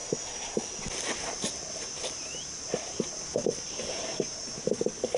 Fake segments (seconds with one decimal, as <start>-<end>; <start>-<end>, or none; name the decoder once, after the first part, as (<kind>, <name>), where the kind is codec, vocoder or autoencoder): 0.0-5.2 (vocoder, BigVGAN v2)